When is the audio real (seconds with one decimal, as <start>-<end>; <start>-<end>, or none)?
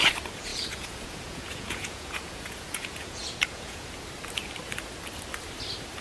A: 0.0-0.5; 3.9-6.0